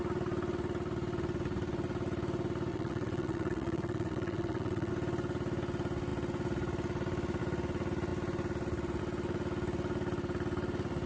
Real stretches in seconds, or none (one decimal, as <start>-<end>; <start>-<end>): 0.0-2.7; 4.9-11.1